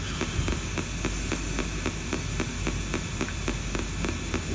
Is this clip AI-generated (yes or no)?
no